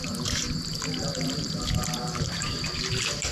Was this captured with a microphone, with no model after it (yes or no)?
yes